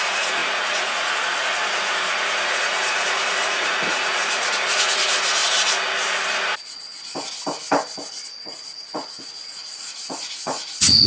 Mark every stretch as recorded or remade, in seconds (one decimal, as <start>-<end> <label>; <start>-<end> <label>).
0.0-5.4 remade; 5.4-8.3 recorded; 8.3-11.1 remade